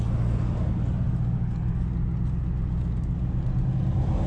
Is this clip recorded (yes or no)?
yes